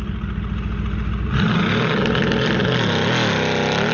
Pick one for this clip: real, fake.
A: real